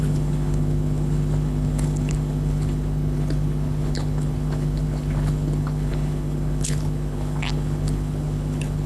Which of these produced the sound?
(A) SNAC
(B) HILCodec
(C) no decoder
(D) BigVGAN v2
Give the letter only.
B